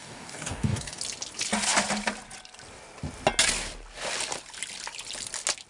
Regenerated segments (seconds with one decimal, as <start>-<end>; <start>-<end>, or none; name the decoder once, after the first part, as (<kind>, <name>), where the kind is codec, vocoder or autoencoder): 0.0-1.0 (codec, DAC)